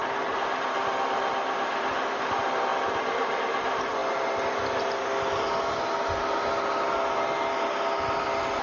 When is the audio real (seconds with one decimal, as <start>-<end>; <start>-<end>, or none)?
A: 0.0-8.6